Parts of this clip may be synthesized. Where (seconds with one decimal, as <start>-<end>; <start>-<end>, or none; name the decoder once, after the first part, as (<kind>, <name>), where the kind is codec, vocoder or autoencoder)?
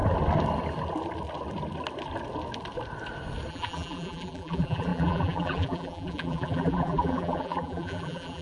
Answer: 3.5-8.4 (vocoder, BigVGAN v2)